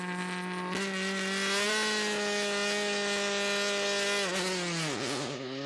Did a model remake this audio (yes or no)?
no